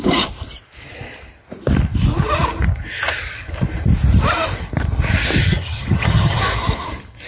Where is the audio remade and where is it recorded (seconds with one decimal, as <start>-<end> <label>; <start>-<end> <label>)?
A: 0.0-5.4 recorded; 5.4-6.4 remade; 6.4-7.3 recorded